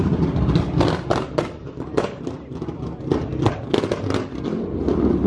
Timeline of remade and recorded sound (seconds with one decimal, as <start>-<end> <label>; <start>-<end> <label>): 0.0-1.6 recorded; 1.6-2.2 remade; 2.2-5.3 recorded